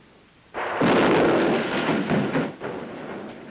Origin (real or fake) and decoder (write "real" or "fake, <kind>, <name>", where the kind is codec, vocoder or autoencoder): real